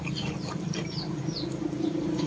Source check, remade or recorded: recorded